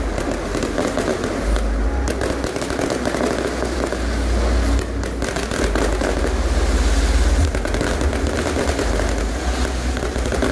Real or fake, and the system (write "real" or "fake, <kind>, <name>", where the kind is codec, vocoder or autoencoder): real